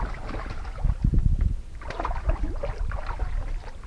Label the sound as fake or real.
real